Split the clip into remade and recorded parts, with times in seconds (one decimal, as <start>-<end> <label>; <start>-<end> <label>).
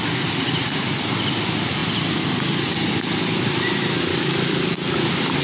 0.0-4.1 recorded; 4.1-4.7 remade; 4.7-5.4 recorded